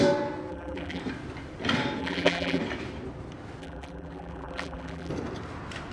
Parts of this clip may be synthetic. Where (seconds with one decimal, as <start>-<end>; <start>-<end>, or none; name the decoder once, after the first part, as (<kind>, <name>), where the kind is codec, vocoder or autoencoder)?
0.5-1.0 (vocoder, BigVGAN v2); 2.0-2.6; 3.6-5.1